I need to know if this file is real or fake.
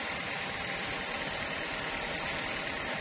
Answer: real